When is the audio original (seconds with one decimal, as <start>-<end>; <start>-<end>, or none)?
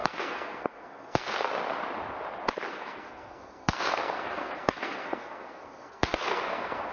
1.5-2.7